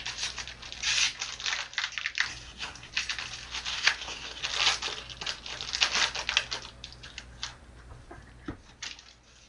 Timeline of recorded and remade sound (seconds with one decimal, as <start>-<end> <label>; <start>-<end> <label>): 0.0-2.3 recorded; 2.3-2.9 remade; 2.9-3.7 recorded; 3.7-4.4 remade; 4.4-9.5 recorded